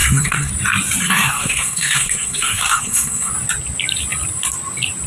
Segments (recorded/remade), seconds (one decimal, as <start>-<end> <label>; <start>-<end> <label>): 0.0-0.5 remade; 0.5-1.0 recorded; 1.0-3.3 remade; 3.3-5.1 recorded